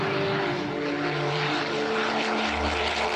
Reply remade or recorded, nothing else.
remade